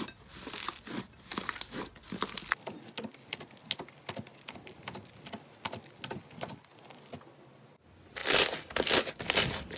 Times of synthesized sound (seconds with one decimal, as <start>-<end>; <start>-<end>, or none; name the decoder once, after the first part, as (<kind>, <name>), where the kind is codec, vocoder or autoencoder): none